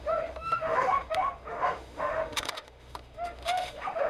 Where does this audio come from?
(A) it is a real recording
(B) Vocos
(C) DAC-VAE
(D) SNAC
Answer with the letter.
C